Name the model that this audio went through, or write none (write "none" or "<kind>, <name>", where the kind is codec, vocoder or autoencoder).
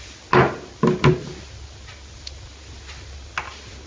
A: none